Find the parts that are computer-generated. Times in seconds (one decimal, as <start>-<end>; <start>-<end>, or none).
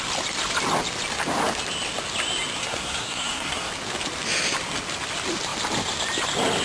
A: 2.6-3.7